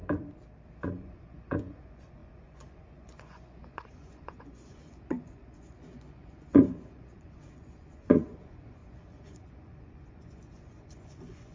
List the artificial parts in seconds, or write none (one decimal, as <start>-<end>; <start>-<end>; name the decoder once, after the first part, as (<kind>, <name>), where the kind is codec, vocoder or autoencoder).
0.8-11.5 (vocoder, Vocos)